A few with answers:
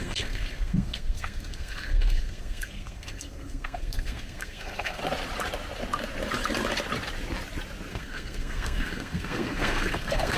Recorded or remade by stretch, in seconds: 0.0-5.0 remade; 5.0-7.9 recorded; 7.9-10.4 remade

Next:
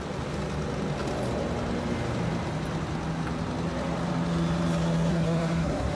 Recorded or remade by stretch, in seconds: 0.0-5.1 recorded; 5.1-6.0 remade

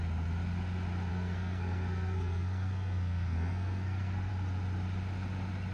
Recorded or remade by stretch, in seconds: 0.0-1.1 recorded; 1.1-4.3 remade; 4.3-5.7 recorded

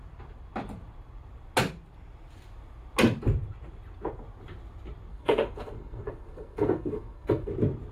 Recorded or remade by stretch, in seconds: 0.0-5.1 recorded; 5.1-7.5 remade; 7.5-7.9 recorded

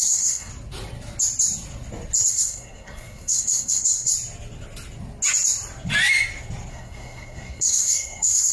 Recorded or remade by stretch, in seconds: 0.0-0.5 remade; 0.5-2.3 recorded; 2.3-4.1 remade; 4.1-6.7 recorded; 6.7-8.5 remade

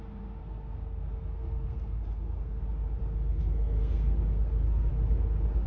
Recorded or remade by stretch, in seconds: 0.0-0.4 recorded; 0.4-2.6 remade; 2.6-3.0 recorded; 3.0-4.9 remade; 4.9-5.7 recorded